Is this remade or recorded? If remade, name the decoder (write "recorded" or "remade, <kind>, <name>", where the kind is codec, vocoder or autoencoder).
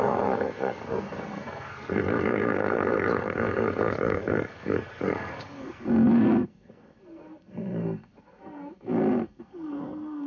remade, codec, SNAC